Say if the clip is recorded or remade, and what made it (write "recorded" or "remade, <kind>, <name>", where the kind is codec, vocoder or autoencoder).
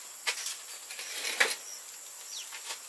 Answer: recorded